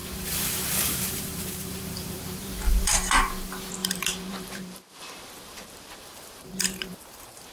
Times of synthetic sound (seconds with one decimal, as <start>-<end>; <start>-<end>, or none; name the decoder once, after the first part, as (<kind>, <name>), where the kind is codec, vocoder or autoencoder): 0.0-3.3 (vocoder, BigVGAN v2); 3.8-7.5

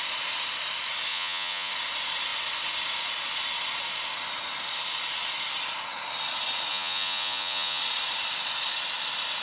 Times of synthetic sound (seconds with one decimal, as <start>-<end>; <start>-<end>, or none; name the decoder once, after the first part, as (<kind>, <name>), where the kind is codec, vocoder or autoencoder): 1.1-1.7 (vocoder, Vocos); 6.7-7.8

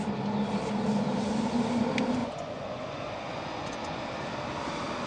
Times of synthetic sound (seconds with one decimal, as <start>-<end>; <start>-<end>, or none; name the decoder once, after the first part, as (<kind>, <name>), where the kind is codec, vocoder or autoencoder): 2.2-4.0 (vocoder, Vocos)

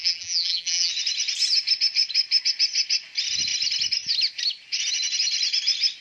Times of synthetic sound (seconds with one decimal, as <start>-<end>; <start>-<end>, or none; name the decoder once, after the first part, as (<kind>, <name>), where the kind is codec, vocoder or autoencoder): 0.0-0.9 (vocoder, BigVGAN v2)